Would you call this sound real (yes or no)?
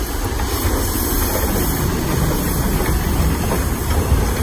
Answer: yes